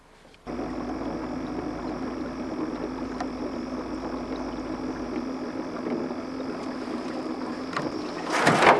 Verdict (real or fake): real